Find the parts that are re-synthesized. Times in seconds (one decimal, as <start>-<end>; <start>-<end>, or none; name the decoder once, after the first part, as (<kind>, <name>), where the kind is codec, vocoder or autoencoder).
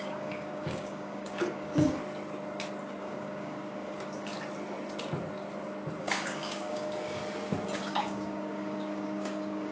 0.0-2.0 (codec, DAC); 3.0-4.3; 6.0-7.2; 7.8-9.7